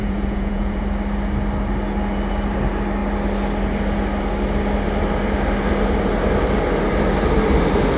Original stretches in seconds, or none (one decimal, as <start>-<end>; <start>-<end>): 0.8-8.0